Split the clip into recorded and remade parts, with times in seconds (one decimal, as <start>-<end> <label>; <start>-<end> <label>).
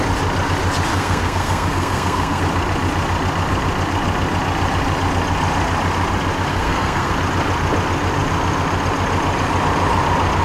0.0-0.9 recorded; 0.9-2.4 remade; 2.4-6.5 recorded; 6.5-7.1 remade; 7.1-10.4 recorded